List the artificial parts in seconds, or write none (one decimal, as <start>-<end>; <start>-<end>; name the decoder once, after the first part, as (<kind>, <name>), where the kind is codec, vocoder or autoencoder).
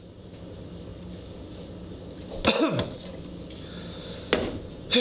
none